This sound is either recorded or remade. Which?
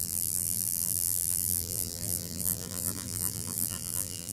remade